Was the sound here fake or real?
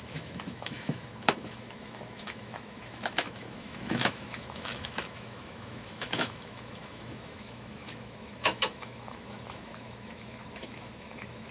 fake